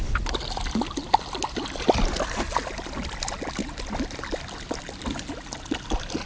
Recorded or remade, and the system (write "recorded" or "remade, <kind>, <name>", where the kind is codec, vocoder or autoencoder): recorded